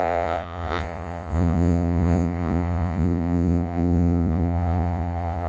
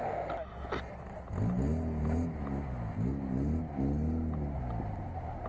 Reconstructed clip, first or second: first